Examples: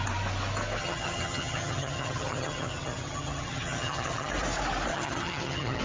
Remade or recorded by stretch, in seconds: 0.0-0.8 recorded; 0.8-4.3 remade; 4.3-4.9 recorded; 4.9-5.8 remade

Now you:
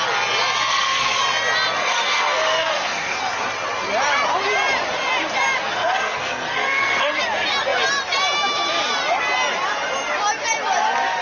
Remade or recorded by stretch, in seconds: 0.0-0.7 recorded; 0.7-1.2 remade; 1.2-1.8 recorded; 1.8-3.2 remade; 3.2-5.6 recorded; 5.6-7.2 remade; 7.2-11.2 recorded

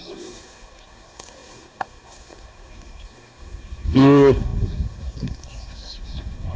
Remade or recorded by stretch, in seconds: 0.0-6.6 remade